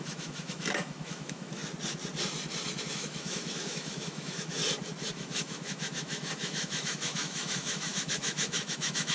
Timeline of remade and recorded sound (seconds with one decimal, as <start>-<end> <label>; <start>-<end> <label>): 0.0-1.6 remade; 1.6-2.9 recorded; 2.9-4.6 remade; 4.6-5.1 recorded; 5.1-9.1 remade